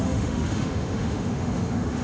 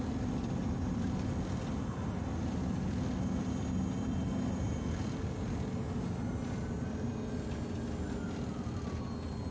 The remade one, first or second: first